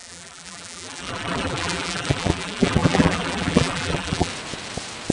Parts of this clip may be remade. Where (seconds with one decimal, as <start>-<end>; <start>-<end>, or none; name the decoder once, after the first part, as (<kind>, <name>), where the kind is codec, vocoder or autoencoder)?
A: 0.0-4.3 (vocoder, BigVGAN v2)